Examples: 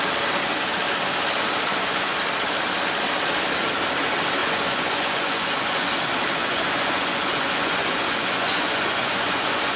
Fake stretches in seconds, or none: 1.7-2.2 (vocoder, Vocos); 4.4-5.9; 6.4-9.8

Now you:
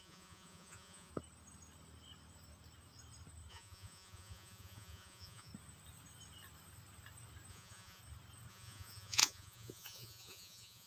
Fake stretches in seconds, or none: 0.0-1.1 (vocoder, Vocos); 3.5-5.5; 7.5-8.0; 8.5-10.9